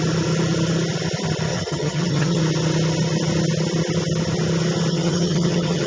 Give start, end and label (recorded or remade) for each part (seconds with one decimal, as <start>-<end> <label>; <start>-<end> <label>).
0.0-1.5 recorded; 1.5-2.4 remade; 2.4-4.9 recorded; 4.9-5.9 remade

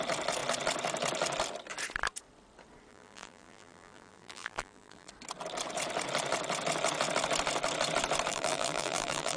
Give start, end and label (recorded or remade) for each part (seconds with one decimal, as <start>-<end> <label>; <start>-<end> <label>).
0.0-2.9 recorded; 2.9-5.1 remade; 5.1-8.3 recorded; 8.3-9.4 remade

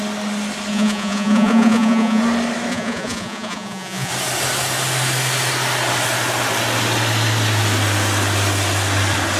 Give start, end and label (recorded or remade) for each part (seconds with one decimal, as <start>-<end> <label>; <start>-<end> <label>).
0.0-0.7 recorded; 0.7-2.2 remade; 2.2-2.7 recorded; 2.7-4.1 remade; 4.1-9.4 recorded

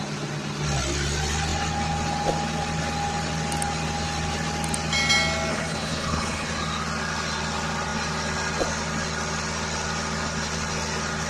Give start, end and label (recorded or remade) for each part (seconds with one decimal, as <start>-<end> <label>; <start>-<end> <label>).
0.0-5.5 recorded; 5.5-6.5 remade; 6.5-11.3 recorded

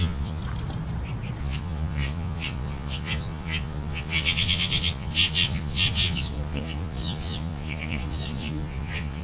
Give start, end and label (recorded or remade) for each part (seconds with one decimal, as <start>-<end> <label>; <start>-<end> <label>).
0.0-0.4 remade; 0.4-1.4 recorded; 1.4-9.2 remade

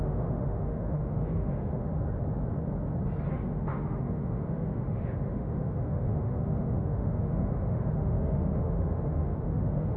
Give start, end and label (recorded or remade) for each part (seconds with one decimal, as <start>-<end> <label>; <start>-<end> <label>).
0.0-1.9 remade; 1.9-3.3 recorded; 3.3-10.0 remade